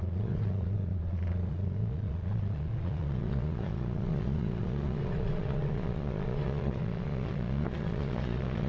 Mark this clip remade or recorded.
remade